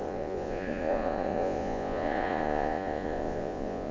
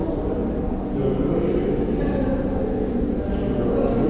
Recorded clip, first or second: second